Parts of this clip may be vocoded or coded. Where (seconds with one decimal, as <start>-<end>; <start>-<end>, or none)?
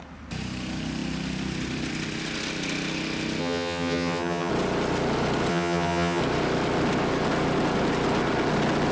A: 3.4-4.5; 5.5-6.2